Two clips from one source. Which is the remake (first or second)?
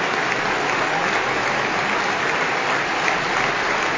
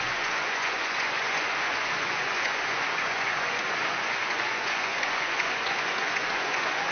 second